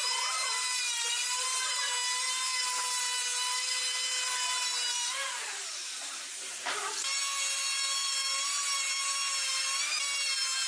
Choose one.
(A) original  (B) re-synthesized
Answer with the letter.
B